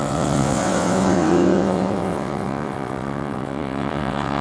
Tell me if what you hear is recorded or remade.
remade